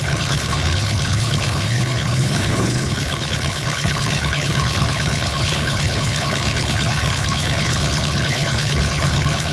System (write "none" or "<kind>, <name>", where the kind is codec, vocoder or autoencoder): codec, HILCodec